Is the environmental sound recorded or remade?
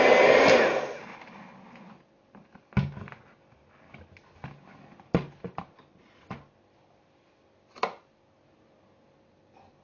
recorded